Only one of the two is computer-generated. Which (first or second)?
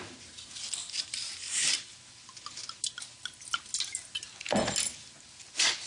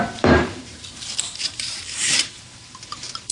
second